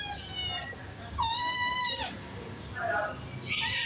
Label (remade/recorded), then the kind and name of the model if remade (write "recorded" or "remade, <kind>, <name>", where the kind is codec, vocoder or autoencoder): recorded